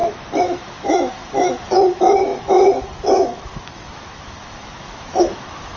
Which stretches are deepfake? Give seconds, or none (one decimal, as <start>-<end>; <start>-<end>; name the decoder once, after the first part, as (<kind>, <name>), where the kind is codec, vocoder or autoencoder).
0.0-5.8 (autoencoder, DAC-VAE)